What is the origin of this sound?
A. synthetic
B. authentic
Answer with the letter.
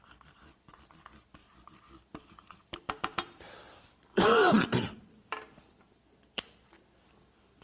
A